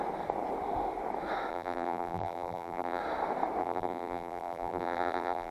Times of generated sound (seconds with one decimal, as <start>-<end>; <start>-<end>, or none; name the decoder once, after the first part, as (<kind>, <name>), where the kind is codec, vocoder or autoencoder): 1.5-3.0 (vocoder, BigVGAN v2); 3.6-5.5